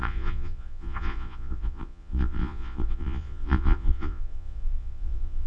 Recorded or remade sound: remade